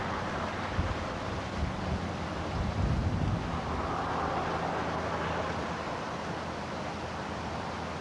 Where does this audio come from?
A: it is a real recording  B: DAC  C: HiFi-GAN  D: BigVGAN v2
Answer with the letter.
A